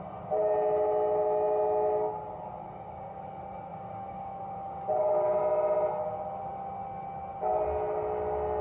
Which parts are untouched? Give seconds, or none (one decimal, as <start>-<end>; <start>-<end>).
0.0-2.6; 3.2-3.7; 5.4-8.6